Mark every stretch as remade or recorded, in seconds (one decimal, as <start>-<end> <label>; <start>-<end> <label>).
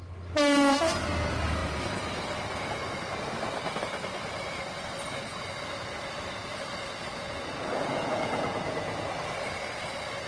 0.0-7.1 recorded; 7.1-9.1 remade; 9.1-10.3 recorded